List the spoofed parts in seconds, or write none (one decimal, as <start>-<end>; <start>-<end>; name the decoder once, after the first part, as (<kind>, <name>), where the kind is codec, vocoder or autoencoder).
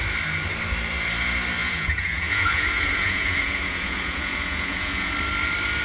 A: 1.6-5.1 (vocoder, Vocos)